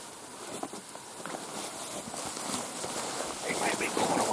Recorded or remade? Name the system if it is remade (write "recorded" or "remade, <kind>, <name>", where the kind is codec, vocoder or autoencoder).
recorded